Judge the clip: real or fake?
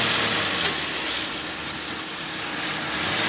real